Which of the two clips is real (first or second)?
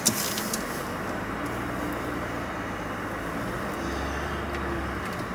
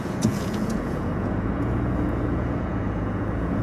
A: first